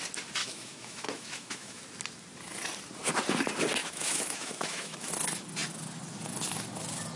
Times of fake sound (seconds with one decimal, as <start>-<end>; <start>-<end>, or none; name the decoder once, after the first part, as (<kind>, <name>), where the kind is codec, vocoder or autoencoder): 0.4-1.8 (autoencoder, DAC-VAE); 3.8-5.1